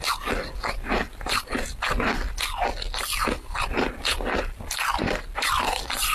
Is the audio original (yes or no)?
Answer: yes